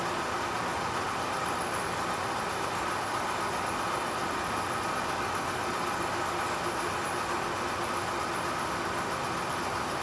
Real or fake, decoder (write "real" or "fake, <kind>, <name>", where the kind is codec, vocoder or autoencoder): real